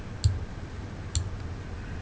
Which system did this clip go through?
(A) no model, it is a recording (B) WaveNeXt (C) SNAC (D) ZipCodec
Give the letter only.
A